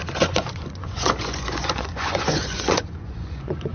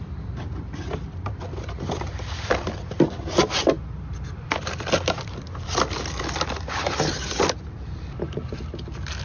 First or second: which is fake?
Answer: first